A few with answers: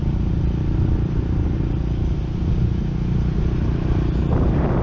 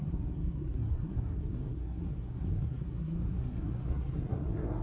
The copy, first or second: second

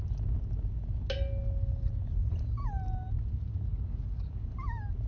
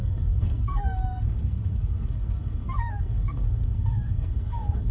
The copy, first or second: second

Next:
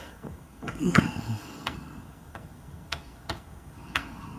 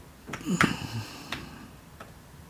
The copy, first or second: first